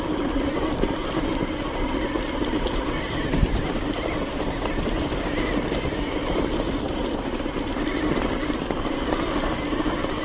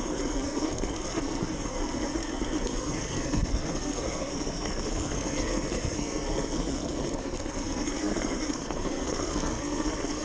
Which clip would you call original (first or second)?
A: first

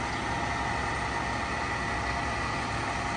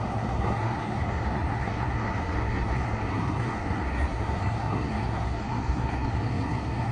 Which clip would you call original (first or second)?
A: first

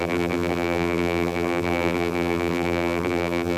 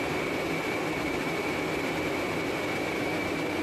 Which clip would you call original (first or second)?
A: second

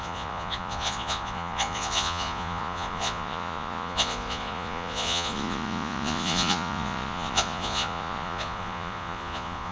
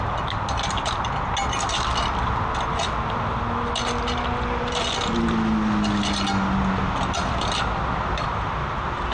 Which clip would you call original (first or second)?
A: second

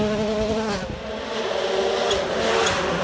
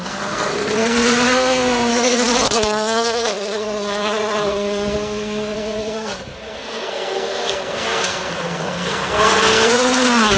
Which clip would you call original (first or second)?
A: first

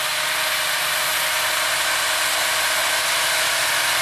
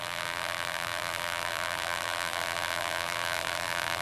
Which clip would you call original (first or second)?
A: first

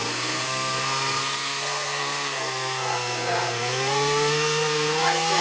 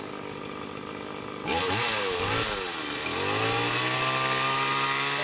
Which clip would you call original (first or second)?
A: second